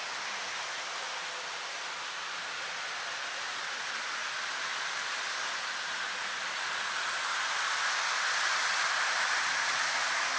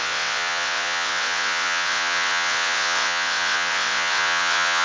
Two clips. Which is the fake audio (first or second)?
second